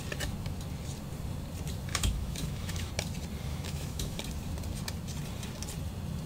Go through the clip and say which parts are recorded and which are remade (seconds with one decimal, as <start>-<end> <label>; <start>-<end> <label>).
0.0-1.9 recorded; 1.9-2.9 remade; 2.9-3.5 recorded; 3.5-4.2 remade; 4.2-6.3 recorded